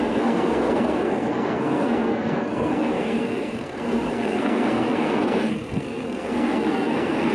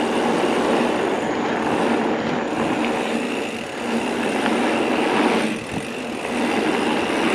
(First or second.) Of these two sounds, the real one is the second